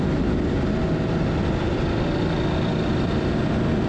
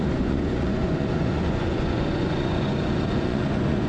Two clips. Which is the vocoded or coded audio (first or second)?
second